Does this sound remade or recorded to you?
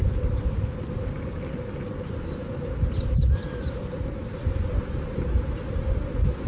recorded